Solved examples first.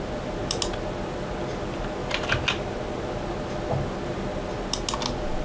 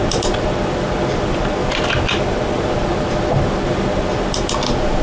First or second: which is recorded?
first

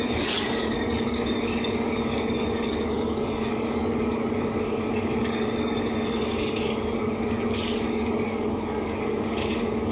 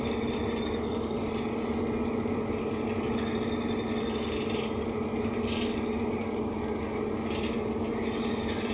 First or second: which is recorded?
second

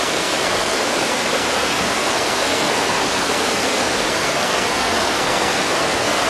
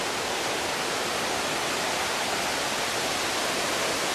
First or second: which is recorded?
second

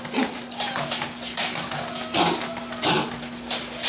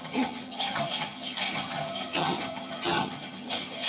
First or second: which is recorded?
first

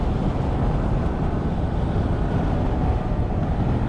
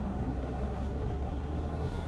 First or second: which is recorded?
first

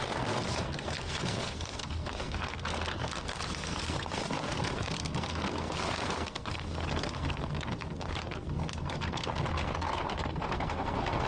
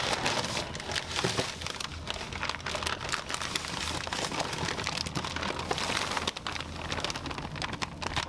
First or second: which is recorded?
second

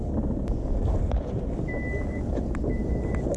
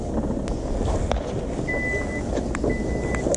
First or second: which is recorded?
second